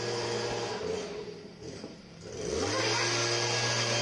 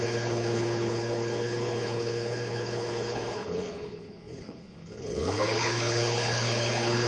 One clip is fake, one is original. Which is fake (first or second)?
second